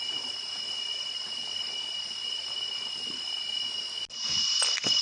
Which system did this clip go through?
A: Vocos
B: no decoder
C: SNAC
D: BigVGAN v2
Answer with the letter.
B